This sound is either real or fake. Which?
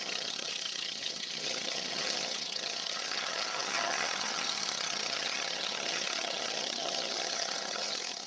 fake